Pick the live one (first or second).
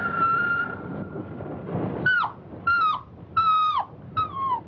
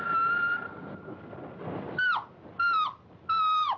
second